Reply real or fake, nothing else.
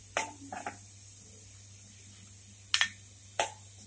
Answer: real